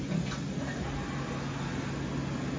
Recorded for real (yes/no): yes